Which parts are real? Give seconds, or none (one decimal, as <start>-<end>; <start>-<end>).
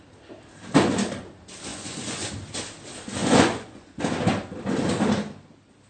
0.0-1.7; 2.3-3.2; 4.0-5.9